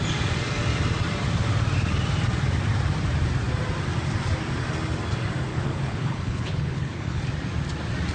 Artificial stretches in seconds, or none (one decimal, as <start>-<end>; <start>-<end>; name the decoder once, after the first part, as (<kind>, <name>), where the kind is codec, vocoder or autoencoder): 5.5-7.2 (codec, HILCodec)